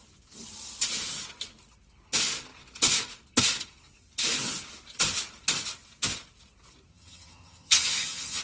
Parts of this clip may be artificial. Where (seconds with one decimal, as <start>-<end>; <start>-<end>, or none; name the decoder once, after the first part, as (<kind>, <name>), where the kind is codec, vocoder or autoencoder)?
6.9-8.4 (vocoder, HiFi-GAN)